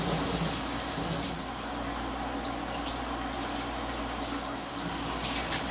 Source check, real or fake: real